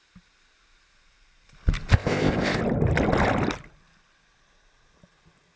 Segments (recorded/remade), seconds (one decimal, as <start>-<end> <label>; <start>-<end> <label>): 0.0-1.9 recorded; 1.9-2.6 remade; 2.6-5.6 recorded